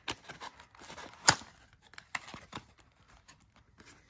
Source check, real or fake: real